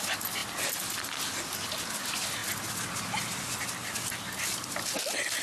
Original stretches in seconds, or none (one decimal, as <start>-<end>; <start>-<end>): 0.0-5.4